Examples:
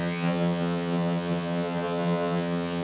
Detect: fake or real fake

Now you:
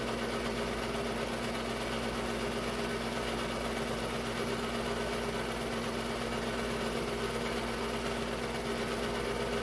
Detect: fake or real real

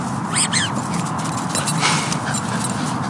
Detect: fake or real real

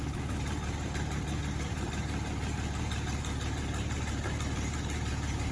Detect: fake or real fake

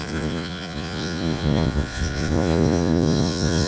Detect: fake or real fake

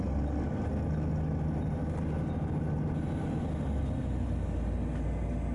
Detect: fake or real real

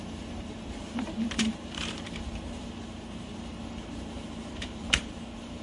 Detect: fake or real fake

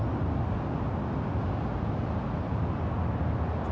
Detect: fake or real real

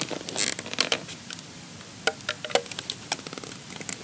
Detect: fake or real real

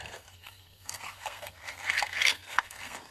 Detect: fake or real fake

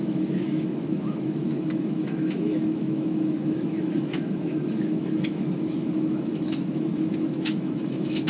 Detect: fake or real fake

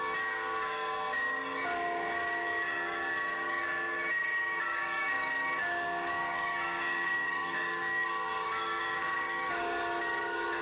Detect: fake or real fake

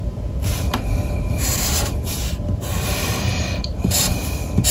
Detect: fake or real fake